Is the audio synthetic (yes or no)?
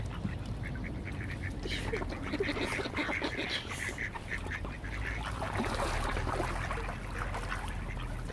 no